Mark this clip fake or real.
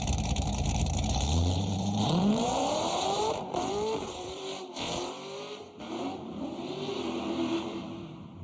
fake